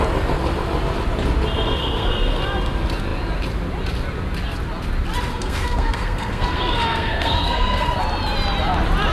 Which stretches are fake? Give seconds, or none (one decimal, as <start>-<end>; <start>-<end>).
1.8-2.4; 5.3-8.0